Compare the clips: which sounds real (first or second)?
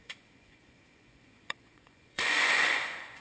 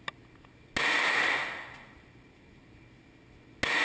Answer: second